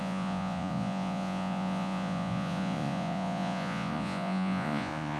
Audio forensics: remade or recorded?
remade